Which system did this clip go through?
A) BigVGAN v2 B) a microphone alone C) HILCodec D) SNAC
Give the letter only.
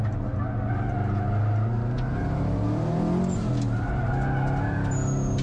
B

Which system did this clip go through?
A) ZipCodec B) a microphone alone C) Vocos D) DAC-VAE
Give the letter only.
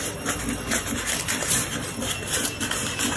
B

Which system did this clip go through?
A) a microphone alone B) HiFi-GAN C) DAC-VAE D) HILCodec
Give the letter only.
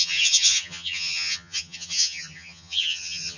B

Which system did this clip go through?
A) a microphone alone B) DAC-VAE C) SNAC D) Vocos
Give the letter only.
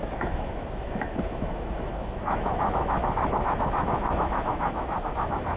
B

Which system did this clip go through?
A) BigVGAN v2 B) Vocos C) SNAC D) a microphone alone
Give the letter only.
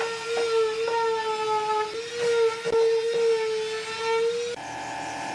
D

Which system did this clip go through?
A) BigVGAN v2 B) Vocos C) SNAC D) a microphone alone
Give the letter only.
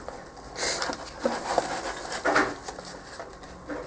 D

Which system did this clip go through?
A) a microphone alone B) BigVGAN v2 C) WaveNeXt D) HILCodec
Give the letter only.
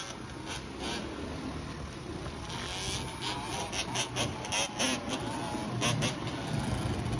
A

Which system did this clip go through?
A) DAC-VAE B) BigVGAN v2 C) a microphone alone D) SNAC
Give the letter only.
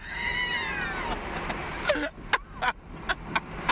C